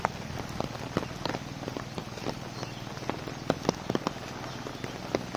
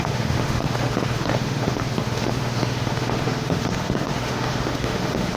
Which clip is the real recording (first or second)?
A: first